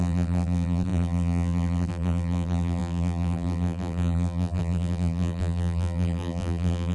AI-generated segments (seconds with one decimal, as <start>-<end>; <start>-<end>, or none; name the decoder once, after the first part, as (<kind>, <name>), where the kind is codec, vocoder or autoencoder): 0.0-6.9 (vocoder, BigVGAN v2)